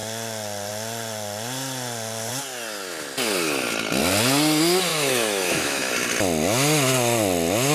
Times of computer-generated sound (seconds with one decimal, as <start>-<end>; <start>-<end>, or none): 4.9-5.9